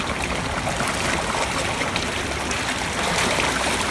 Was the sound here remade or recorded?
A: recorded